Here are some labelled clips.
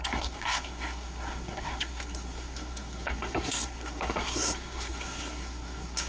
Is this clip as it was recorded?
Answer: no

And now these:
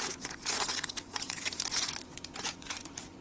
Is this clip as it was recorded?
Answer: no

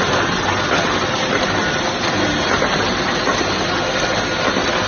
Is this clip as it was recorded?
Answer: yes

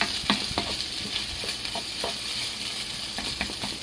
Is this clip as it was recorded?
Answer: yes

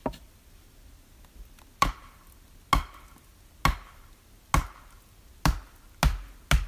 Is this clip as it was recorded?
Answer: yes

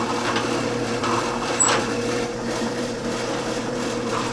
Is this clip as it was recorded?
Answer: no